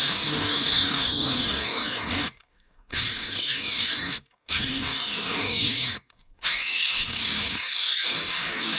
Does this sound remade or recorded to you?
remade